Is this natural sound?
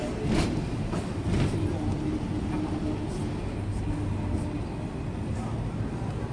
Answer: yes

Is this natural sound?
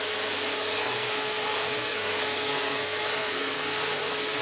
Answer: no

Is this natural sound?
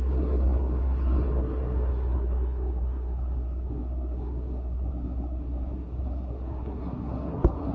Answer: no